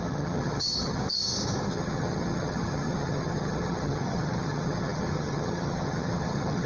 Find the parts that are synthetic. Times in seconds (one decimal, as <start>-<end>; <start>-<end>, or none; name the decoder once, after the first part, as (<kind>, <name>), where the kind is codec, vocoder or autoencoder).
0.0-1.0 (vocoder, HiFi-GAN); 1.7-6.7